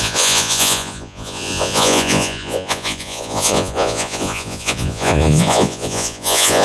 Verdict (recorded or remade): remade